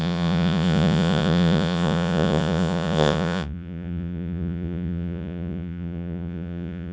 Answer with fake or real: fake